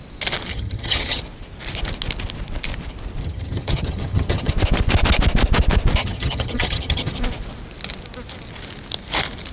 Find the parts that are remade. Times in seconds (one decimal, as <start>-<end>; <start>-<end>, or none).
0.5-1.2; 3.2-4.5; 6.0-7.2

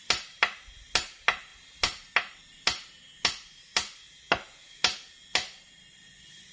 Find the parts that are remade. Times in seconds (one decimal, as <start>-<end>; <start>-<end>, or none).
none

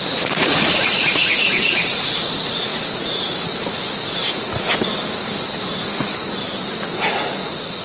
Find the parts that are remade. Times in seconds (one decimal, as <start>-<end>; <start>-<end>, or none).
0.0-4.2; 6.7-7.8

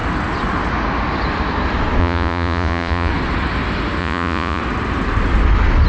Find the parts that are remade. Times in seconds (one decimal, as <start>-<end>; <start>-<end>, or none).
2.0-3.1; 4.0-4.6

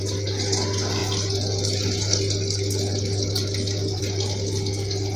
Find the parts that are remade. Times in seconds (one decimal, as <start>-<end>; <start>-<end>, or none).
none

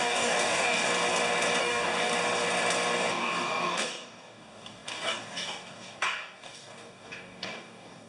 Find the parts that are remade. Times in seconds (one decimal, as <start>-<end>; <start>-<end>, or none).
0.0-0.9; 1.6-2.1; 3.1-8.1

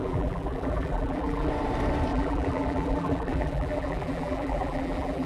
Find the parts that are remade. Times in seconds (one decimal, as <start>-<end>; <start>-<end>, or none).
0.0-1.5; 2.1-5.3